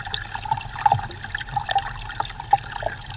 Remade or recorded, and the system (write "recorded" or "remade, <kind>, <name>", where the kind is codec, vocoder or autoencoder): recorded